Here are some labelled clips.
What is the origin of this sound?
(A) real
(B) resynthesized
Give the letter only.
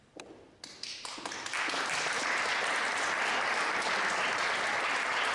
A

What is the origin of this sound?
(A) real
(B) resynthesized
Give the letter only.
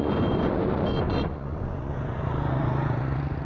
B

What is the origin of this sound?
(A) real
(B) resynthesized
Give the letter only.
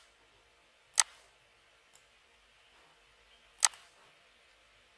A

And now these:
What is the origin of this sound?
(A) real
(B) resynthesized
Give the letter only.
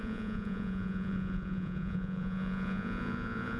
B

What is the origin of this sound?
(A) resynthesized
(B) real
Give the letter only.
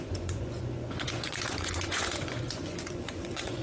A